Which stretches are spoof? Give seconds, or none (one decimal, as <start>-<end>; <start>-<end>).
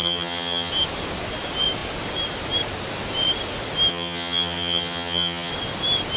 0.0-0.7; 3.9-5.5